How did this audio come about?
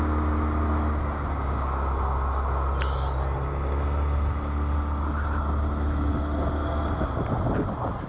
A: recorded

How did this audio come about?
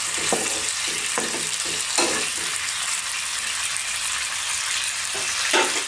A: remade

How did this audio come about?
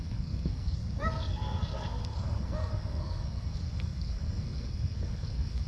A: remade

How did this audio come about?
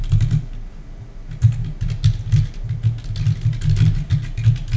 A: recorded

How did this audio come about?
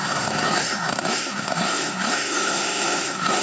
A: remade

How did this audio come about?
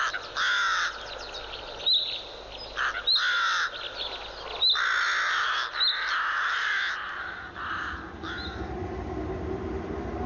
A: recorded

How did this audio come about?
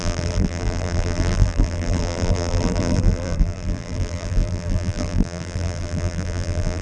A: remade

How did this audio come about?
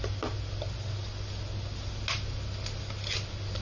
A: recorded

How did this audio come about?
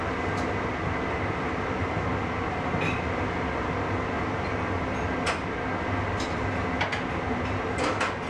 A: recorded